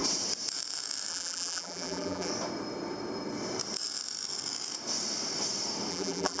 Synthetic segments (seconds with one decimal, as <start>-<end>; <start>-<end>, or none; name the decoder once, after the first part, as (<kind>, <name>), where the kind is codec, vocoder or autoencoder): 1.1-2.3 (vocoder, BigVGAN v2); 5.9-6.4